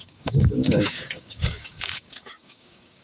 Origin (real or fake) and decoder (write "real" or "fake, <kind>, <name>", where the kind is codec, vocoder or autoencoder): fake, codec, DAC